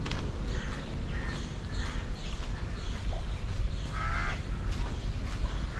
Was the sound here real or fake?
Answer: real